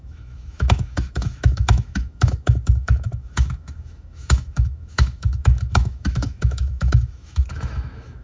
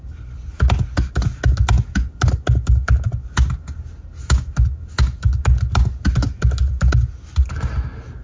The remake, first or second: first